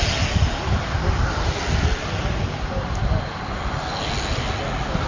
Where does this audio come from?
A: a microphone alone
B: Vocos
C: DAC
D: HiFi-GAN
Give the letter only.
A